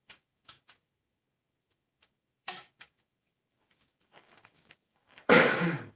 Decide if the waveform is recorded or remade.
remade